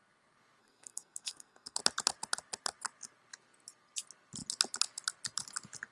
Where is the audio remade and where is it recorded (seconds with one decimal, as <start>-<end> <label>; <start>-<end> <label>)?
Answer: 0.0-0.6 recorded; 0.6-1.8 remade; 1.8-5.9 recorded